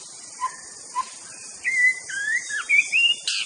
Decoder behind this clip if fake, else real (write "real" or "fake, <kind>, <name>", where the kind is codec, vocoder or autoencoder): real